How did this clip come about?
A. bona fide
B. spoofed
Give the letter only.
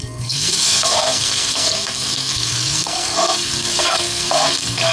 B